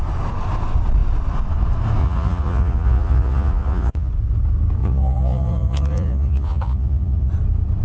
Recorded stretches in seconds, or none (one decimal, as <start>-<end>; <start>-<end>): 0.0-2.0; 4.1-4.8; 7.3-7.8